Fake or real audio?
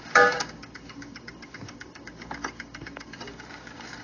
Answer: fake